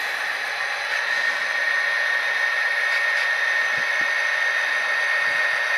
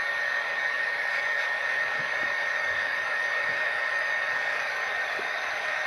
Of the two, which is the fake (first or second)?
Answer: second